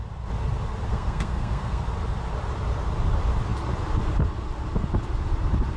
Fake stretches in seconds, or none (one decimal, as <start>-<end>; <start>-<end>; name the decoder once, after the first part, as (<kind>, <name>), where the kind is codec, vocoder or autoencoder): 0.9-1.8 (codec, SNAC)